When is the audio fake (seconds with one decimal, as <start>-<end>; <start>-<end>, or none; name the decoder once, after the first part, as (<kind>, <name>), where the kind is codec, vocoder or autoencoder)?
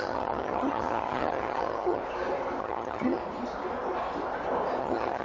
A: 0.0-2.0 (vocoder, HiFi-GAN); 2.6-3.2; 4.8-5.2